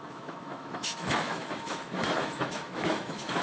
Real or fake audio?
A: fake